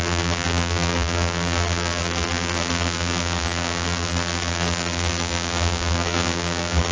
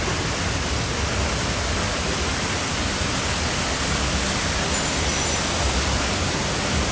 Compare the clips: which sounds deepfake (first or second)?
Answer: first